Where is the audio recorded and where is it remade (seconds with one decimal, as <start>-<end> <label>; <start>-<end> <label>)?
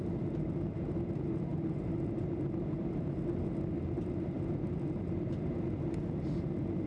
0.0-6.9 recorded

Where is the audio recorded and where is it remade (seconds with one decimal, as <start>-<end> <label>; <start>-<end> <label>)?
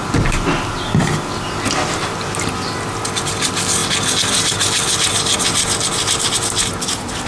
0.0-7.3 recorded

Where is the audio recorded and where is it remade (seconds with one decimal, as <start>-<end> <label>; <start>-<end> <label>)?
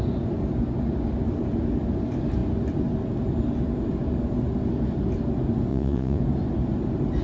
0.0-5.7 recorded; 5.7-6.2 remade; 6.2-7.2 recorded